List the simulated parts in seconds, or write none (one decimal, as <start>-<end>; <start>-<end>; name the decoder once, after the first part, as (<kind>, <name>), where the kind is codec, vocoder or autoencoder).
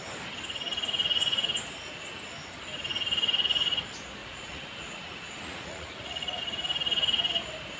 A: 4.2-6.4 (vocoder, Vocos)